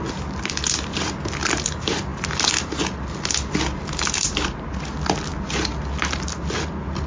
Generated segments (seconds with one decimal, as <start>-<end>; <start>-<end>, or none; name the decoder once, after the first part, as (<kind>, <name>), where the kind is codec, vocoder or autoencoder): none